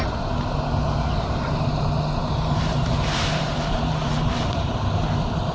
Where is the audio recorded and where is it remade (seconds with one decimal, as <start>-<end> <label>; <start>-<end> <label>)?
0.0-2.2 recorded; 2.2-4.7 remade; 4.7-5.5 recorded